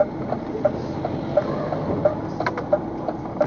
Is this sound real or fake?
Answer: real